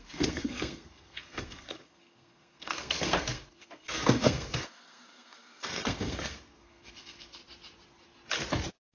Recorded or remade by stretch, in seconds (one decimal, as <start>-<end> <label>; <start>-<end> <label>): 0.0-7.4 remade; 7.4-8.9 recorded